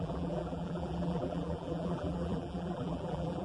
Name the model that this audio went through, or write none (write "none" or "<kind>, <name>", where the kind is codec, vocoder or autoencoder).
vocoder, BigVGAN v2